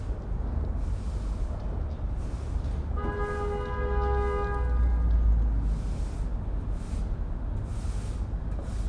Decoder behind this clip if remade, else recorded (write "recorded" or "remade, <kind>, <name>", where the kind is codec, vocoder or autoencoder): recorded